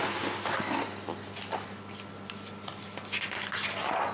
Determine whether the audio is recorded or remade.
recorded